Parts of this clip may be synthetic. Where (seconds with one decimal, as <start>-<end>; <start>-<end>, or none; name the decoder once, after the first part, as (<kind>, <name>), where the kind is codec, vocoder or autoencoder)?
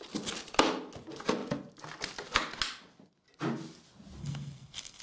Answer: 4.2-5.0 (codec, SNAC)